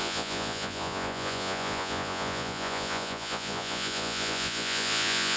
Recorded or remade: remade